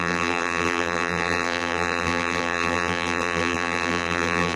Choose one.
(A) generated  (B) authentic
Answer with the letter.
A